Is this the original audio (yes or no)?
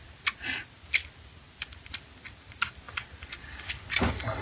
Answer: yes